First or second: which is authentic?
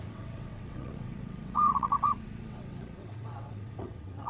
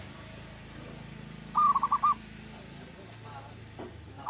second